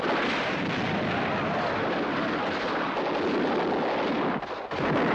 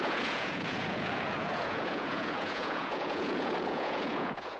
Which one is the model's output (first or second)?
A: second